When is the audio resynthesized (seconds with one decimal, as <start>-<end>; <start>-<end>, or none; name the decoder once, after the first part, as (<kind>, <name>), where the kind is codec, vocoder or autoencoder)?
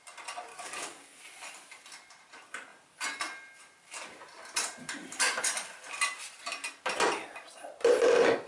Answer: 0.5-1.2 (codec, DAC)